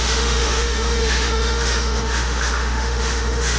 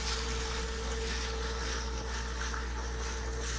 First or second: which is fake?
first